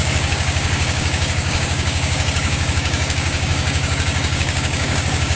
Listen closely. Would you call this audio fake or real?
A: fake